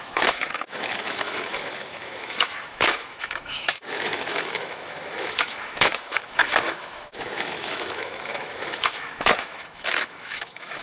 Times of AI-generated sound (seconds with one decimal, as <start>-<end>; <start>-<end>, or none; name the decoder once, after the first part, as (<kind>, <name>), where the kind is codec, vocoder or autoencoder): 0.0-10.8 (autoencoder, DAC-VAE)